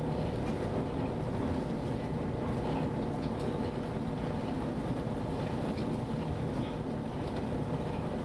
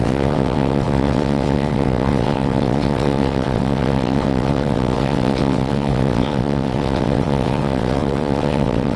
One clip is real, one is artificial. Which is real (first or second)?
first